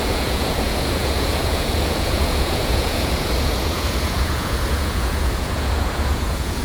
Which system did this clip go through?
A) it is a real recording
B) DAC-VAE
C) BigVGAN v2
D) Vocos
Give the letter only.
D